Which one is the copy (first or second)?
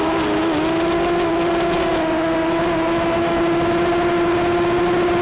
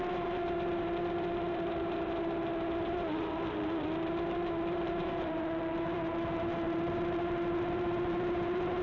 second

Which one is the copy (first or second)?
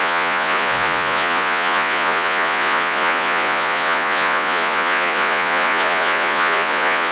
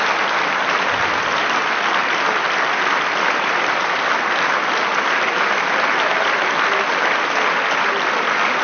first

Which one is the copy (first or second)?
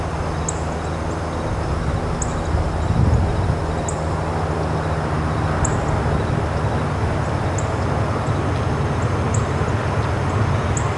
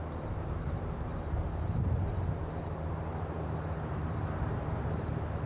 second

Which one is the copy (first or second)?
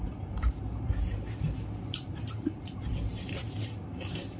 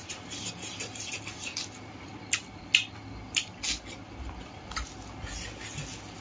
first